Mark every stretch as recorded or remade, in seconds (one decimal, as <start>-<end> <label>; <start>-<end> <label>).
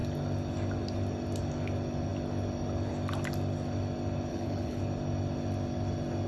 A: 0.0-4.3 recorded; 4.3-4.8 remade; 4.8-6.3 recorded